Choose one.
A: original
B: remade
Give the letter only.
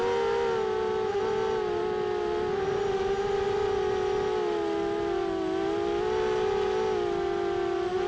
A